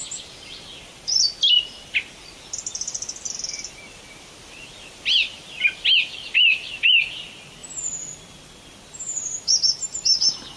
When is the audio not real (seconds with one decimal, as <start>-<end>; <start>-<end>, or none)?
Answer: none